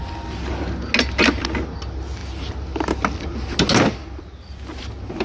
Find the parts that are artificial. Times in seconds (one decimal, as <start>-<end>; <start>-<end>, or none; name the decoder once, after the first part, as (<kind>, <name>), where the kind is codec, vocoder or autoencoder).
none

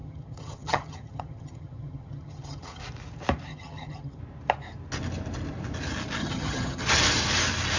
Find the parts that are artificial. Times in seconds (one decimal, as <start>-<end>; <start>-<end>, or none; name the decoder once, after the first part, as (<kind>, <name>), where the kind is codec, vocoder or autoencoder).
0.0-2.8 (vocoder, HiFi-GAN); 3.5-4.2; 6.2-6.8